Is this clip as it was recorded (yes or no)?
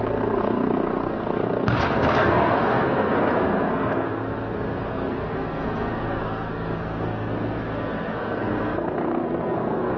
no